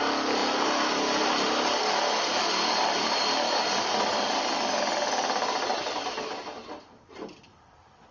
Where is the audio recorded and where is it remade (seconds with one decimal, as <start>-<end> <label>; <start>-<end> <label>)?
0.0-8.1 recorded